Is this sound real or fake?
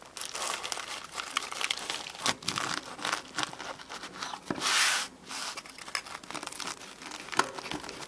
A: real